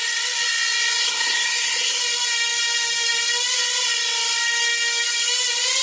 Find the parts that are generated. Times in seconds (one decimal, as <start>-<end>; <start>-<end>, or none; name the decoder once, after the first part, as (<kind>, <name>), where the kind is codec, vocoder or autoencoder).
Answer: 1.0-2.0 (codec, SNAC)